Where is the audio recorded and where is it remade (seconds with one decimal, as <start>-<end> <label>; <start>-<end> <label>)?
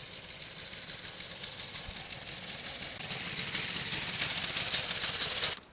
0.0-5.7 recorded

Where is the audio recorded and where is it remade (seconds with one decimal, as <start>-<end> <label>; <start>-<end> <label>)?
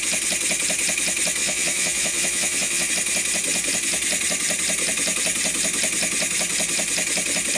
0.0-1.4 recorded; 1.4-2.9 remade; 2.9-7.6 recorded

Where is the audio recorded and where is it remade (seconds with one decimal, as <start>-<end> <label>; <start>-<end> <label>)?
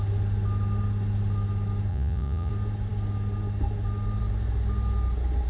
0.0-1.9 recorded; 1.9-2.5 remade; 2.5-5.5 recorded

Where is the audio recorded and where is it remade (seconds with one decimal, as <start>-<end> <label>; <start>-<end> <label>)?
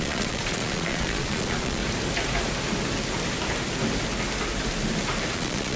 0.0-1.8 remade; 1.8-5.3 recorded; 5.3-5.8 remade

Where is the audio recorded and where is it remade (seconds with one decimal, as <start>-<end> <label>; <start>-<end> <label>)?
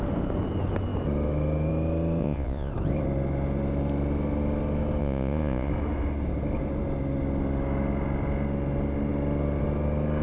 0.0-2.2 recorded; 2.2-2.7 remade; 2.7-5.0 recorded; 5.0-5.7 remade; 5.7-10.2 recorded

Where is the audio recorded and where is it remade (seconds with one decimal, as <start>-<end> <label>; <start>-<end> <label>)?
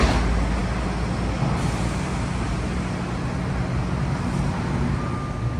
0.0-5.6 recorded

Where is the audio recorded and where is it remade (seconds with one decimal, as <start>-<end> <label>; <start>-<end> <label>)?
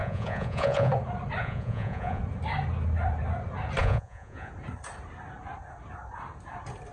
0.0-0.9 remade; 0.9-1.4 recorded; 1.4-2.2 remade; 2.2-3.8 recorded; 3.8-4.5 remade; 4.5-6.9 recorded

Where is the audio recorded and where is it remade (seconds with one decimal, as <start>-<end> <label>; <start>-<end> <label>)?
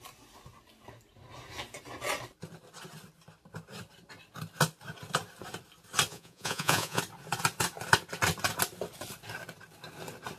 0.0-6.1 recorded; 6.1-7.0 remade; 7.0-10.4 recorded